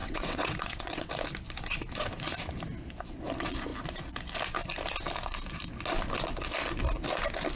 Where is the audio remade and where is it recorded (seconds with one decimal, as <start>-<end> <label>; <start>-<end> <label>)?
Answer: 0.0-1.1 remade; 1.1-7.6 recorded

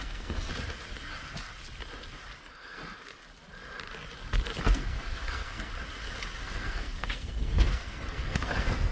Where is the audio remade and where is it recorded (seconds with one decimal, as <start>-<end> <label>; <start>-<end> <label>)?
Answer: 0.0-0.5 remade; 0.5-2.4 recorded; 2.4-2.8 remade; 2.8-4.6 recorded; 4.6-5.7 remade; 5.7-6.4 recorded; 6.4-8.9 remade

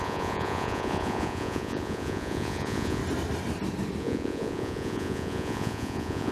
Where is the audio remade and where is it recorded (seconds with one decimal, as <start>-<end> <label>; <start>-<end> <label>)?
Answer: 0.0-3.0 remade; 3.0-4.0 recorded; 4.0-6.3 remade

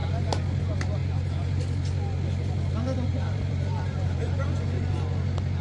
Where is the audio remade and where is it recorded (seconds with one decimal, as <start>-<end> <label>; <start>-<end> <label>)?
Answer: 0.0-3.1 recorded; 3.1-4.9 remade; 4.9-5.6 recorded

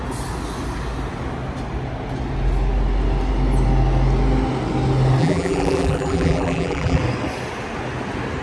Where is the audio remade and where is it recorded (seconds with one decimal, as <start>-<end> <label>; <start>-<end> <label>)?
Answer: 0.0-5.2 recorded; 5.2-7.0 remade; 7.0-8.4 recorded

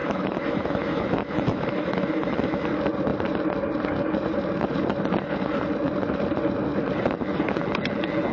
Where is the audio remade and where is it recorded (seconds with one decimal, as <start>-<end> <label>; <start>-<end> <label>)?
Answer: 0.0-2.7 remade; 2.7-8.3 recorded

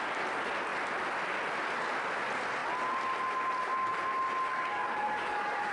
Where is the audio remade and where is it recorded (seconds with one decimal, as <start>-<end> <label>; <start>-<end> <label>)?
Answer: 0.0-4.5 recorded; 4.5-5.7 remade